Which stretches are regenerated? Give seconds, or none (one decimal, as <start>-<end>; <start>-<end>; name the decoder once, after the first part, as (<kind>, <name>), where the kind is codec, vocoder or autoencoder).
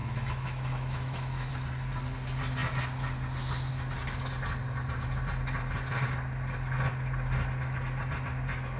0.0-1.5 (autoencoder, DAC-VAE)